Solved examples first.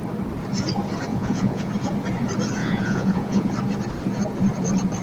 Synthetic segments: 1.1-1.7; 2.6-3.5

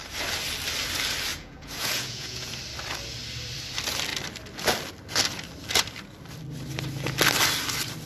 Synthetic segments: 1.3-2.5

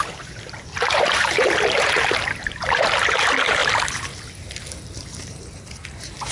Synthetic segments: 0.0-3.6; 5.1-6.3

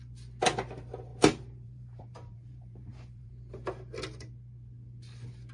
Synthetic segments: 1.1-3.3